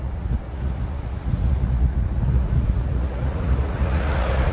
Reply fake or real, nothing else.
fake